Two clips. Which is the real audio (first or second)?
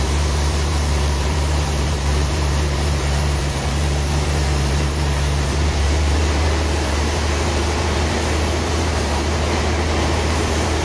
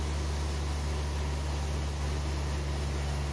second